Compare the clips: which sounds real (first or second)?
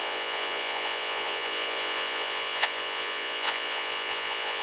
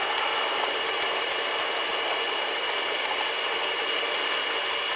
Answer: second